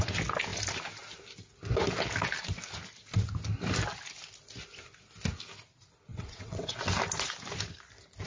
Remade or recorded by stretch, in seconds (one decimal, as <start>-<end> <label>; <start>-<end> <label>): 0.0-6.1 recorded; 6.1-6.8 remade; 6.8-8.3 recorded